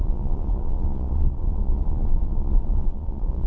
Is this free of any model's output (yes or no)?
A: no